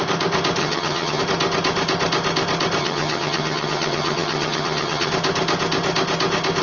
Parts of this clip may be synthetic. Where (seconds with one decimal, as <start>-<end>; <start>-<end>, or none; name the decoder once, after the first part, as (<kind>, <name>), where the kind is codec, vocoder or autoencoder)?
0.6-1.2 (vocoder, HiFi-GAN); 2.8-5.1